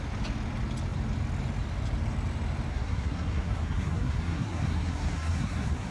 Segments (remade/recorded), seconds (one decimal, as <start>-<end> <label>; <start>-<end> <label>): 0.0-2.7 recorded; 2.7-5.9 remade